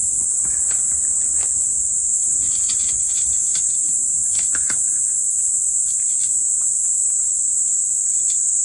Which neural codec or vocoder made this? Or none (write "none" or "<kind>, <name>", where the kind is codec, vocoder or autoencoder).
none